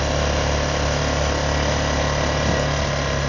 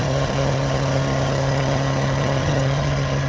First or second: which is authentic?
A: first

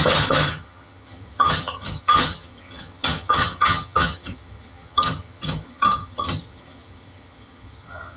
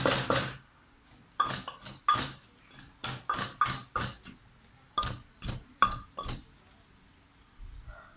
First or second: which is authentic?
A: second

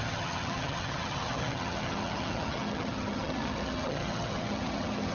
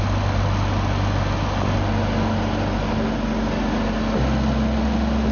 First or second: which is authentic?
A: second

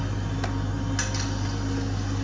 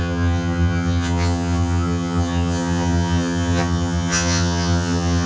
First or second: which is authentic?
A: first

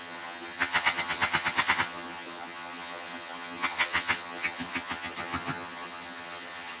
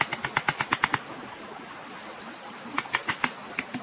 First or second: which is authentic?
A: second